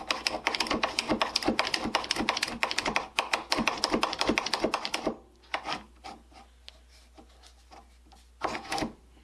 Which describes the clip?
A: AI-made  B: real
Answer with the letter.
B